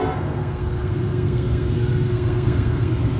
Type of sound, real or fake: fake